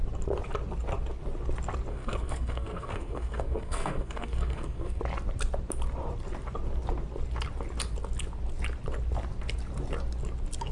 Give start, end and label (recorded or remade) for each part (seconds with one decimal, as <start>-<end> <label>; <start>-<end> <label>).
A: 0.0-1.9 recorded; 1.9-5.0 remade; 5.0-10.7 recorded

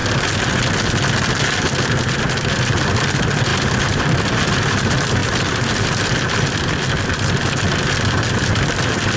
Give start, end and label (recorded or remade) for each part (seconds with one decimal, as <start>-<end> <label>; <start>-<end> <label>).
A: 0.0-1.6 recorded; 1.6-9.2 remade

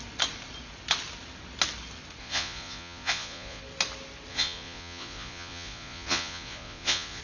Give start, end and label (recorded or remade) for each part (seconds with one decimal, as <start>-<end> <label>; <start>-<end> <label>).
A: 0.0-2.2 recorded; 2.2-3.6 remade; 3.6-4.3 recorded; 4.3-7.2 remade

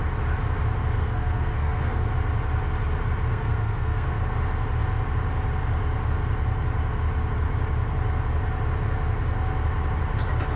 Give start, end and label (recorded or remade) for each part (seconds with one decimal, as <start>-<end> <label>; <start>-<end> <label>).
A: 0.0-1.0 recorded; 1.0-2.1 remade; 2.1-3.3 recorded; 3.3-4.2 remade; 4.2-10.6 recorded